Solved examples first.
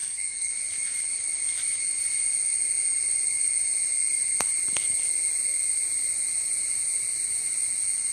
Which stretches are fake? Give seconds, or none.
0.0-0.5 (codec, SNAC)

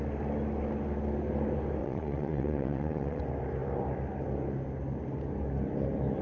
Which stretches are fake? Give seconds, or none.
1.8-3.2 (vocoder, WaveNeXt)

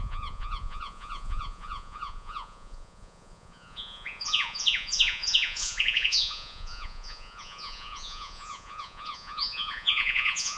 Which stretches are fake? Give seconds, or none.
0.0-10.6 (vocoder, Vocos)

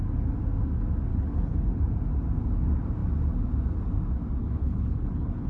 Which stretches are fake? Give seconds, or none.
1.1-1.6 (codec, HILCodec); 4.4-5.5